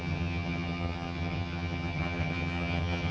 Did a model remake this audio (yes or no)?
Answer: yes